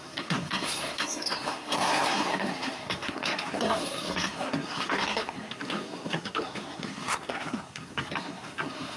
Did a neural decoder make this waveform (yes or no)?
yes